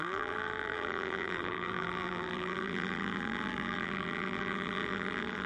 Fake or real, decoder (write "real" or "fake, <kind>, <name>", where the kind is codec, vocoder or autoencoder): fake, vocoder, BigVGAN v2